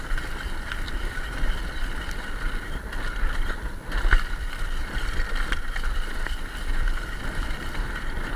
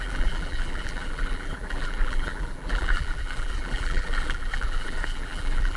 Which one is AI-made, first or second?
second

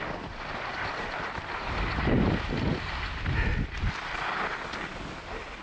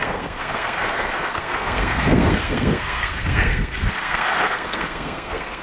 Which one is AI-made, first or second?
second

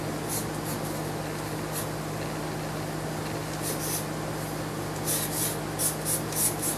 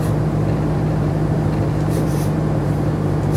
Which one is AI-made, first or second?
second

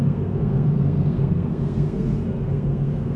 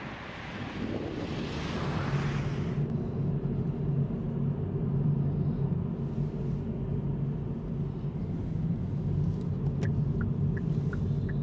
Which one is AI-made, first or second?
first